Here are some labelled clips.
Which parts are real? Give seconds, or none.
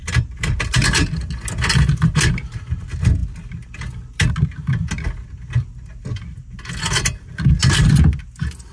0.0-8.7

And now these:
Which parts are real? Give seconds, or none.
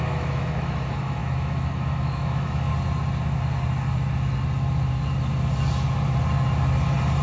2.7-7.2